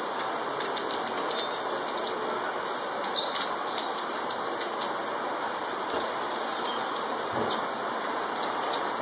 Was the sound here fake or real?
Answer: real